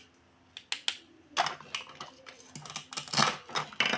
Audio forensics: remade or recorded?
recorded